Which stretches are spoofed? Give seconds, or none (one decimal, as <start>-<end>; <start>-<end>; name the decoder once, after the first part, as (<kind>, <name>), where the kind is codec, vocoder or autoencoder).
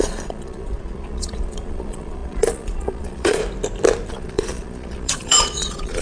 0.0-3.4 (vocoder, Vocos); 4.1-6.0